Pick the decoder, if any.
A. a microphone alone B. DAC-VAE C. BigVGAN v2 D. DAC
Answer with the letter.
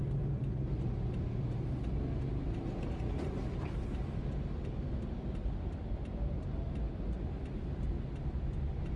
A